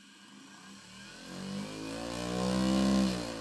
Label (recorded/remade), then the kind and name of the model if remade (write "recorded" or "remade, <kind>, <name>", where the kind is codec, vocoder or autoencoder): recorded